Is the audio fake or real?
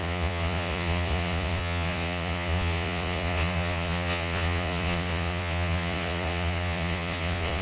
fake